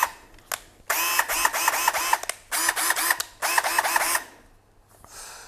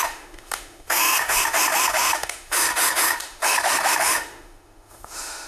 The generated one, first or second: second